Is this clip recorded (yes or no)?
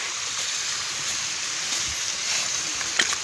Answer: no